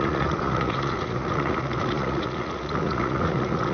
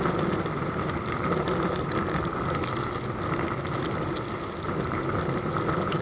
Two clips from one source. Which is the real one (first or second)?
second